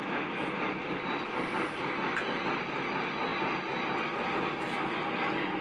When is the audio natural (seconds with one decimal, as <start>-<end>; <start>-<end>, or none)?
0.0-5.6